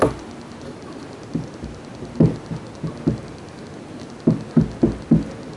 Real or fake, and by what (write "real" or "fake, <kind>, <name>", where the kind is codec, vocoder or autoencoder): real